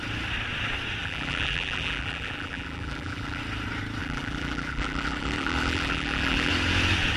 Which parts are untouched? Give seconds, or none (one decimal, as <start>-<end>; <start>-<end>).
0.0-1.0; 3.4-4.0; 6.5-7.2